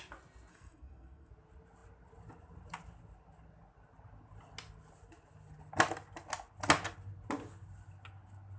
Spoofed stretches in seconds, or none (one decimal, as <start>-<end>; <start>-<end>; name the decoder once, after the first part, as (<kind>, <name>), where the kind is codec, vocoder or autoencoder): 0.5-1.3 (codec, SNAC)